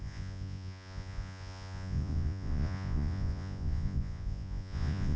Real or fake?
fake